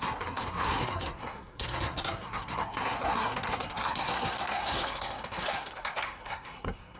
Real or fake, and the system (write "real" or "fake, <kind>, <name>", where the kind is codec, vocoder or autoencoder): fake, codec, SNAC